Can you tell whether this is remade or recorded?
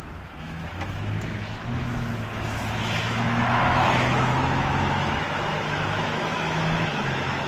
remade